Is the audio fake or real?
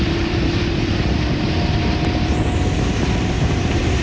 fake